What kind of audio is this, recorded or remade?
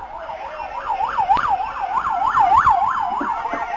recorded